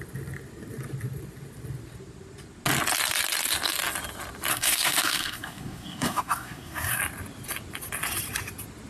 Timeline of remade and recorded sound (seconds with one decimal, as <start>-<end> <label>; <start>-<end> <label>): 0.0-4.5 recorded; 4.5-7.0 remade; 7.0-8.9 recorded